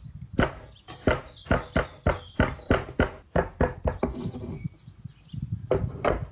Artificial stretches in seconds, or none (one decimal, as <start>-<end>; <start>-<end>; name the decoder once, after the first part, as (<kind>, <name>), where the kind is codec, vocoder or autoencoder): none